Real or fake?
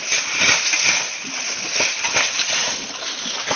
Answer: real